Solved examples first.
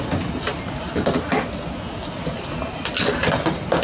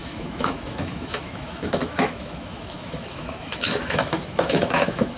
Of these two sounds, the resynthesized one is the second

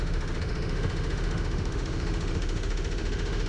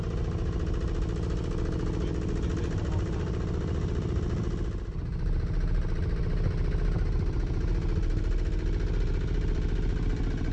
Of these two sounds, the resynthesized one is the first